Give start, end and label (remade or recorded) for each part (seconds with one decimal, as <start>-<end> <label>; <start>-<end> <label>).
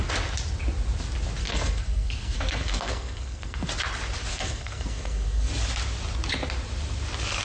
0.0-1.4 recorded; 1.4-3.7 remade; 3.7-4.3 recorded; 4.3-5.5 remade; 5.5-7.4 recorded